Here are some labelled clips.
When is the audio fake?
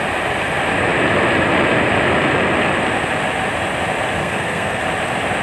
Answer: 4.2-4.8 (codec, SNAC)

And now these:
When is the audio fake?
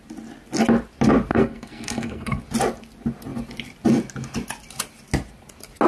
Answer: 1.3-2.4 (codec, SNAC)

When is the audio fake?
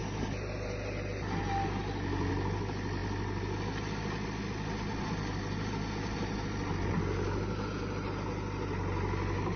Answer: none